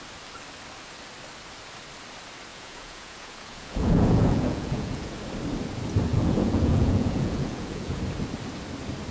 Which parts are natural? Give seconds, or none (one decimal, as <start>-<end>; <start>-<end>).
0.0-2.5; 5.2-6.1; 8.0-9.1